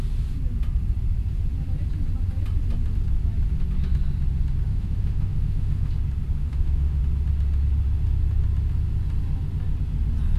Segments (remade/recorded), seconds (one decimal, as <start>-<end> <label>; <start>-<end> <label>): 0.0-4.7 recorded; 4.7-5.9 remade; 5.9-6.4 recorded; 6.4-7.0 remade; 7.0-10.4 recorded

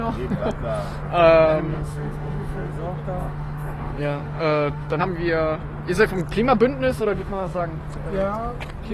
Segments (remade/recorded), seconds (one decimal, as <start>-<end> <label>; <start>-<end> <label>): 0.0-1.7 recorded; 1.7-2.7 remade; 2.7-3.2 recorded; 3.2-5.0 remade; 5.0-6.9 recorded; 6.9-7.6 remade; 7.6-8.9 recorded

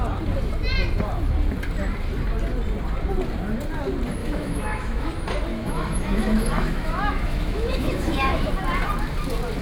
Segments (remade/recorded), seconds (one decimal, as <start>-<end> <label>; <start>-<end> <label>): 0.0-4.2 recorded; 4.2-5.1 remade; 5.1-5.5 recorded; 5.5-8.5 remade; 8.5-9.6 recorded

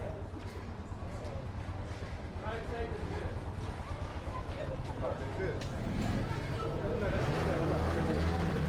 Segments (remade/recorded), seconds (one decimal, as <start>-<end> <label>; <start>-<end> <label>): 0.0-4.1 recorded; 4.1-4.6 remade; 4.6-8.7 recorded